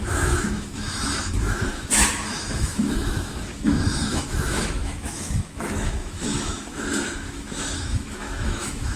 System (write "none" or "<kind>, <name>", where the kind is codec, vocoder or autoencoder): autoencoder, DAC-VAE